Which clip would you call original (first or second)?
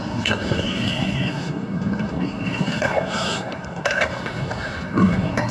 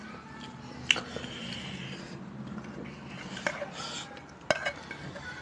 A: second